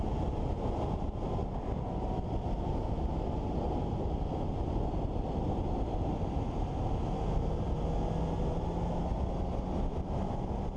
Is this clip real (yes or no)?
yes